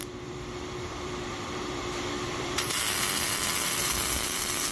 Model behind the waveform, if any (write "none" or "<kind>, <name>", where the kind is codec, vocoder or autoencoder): vocoder, BigVGAN v2